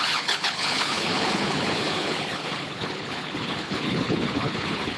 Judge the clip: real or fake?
fake